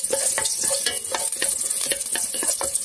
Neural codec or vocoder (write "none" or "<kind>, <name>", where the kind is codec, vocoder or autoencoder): vocoder, Vocos